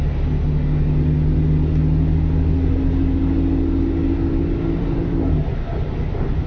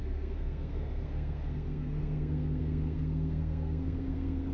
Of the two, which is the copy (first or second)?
second